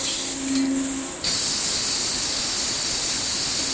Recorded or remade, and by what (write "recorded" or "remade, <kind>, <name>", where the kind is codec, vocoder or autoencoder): recorded